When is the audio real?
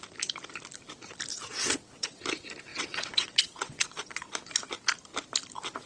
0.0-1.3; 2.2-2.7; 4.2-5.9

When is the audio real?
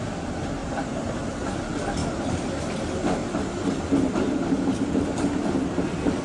0.0-0.6; 1.3-3.2; 3.8-6.2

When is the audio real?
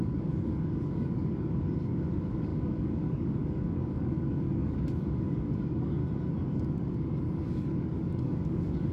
6.0-6.5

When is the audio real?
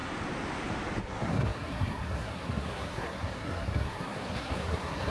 0.0-1.0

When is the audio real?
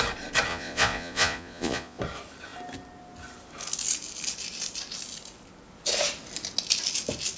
0.0-0.5; 2.0-7.4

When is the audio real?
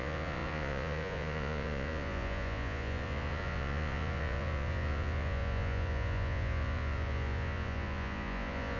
none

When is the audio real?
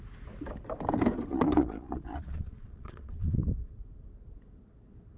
0.0-1.3; 3.4-5.2